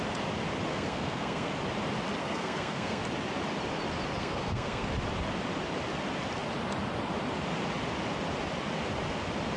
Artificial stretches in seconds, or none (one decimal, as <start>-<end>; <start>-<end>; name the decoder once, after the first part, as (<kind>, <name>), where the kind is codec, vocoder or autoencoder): 0.7-1.5 (codec, SNAC); 2.2-3.0; 4.2-4.9